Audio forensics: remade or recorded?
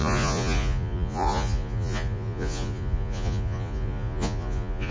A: remade